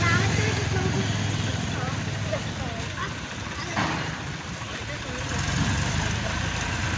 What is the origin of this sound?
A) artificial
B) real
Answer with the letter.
B